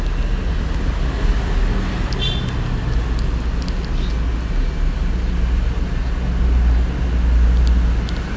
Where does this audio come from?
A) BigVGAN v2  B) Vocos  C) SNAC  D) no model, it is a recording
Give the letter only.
D